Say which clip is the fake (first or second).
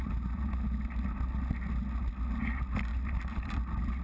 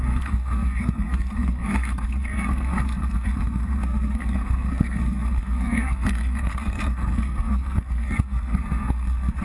second